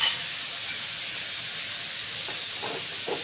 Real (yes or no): yes